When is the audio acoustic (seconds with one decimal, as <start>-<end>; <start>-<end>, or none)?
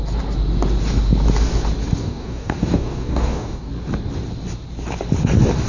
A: 0.0-2.0; 3.7-5.7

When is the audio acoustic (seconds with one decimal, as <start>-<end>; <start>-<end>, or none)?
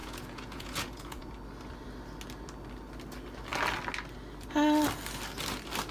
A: 1.3-5.9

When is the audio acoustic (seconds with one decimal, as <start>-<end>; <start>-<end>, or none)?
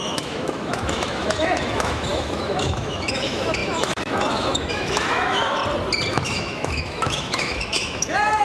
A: 5.6-6.1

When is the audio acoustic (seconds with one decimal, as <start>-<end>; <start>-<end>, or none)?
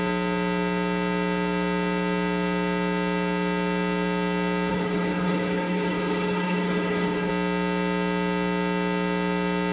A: 0.0-4.7; 7.3-9.7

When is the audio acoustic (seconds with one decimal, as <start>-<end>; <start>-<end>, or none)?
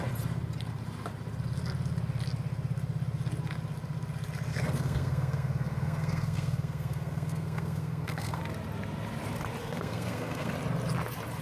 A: 0.0-4.5; 8.4-9.6; 10.5-11.4